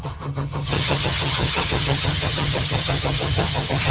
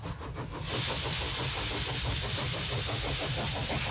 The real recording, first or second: second